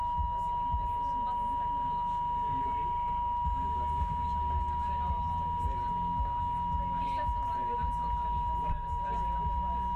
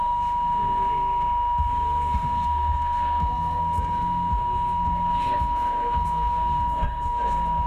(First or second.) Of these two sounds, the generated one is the second